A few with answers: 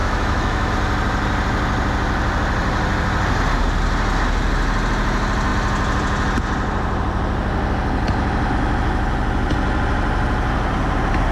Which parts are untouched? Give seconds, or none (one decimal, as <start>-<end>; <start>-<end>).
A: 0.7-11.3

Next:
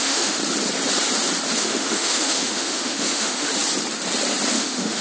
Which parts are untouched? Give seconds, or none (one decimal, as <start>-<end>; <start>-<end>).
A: 0.4-1.6; 3.5-4.5

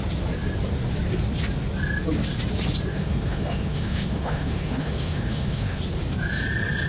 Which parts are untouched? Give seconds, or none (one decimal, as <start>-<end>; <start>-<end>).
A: 0.0-2.9; 5.8-6.9

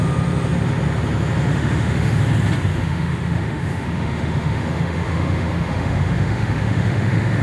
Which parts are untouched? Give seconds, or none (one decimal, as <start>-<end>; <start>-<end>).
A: 0.0-1.5; 2.2-2.7

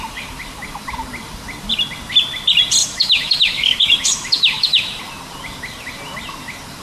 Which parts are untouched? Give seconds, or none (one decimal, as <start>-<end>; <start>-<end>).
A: 0.0-2.8; 5.0-6.8

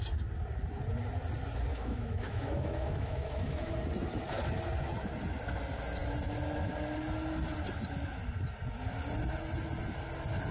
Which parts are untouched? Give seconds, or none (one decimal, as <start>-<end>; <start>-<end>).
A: 0.0-1.7; 3.7-10.5